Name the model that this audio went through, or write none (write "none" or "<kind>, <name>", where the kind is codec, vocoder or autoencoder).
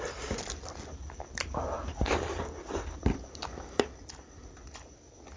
none